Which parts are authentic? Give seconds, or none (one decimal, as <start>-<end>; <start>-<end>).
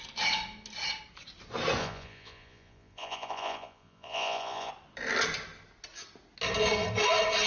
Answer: 0.0-1.8; 4.7-7.5